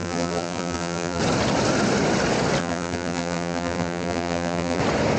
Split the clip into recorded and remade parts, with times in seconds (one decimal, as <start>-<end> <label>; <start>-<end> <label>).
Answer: 0.0-1.2 remade; 1.2-2.6 recorded; 2.6-4.8 remade; 4.8-5.2 recorded